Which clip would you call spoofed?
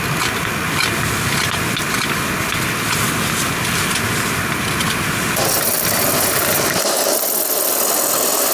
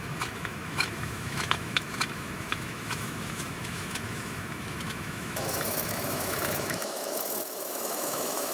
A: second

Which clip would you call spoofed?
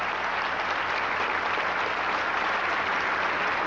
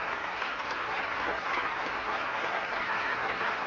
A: second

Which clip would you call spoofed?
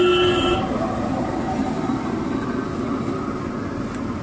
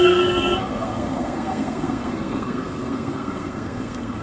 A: second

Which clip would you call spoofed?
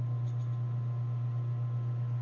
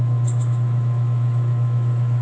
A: second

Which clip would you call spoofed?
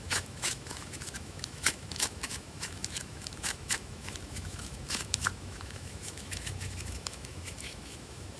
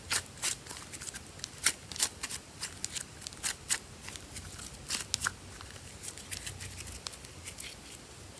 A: first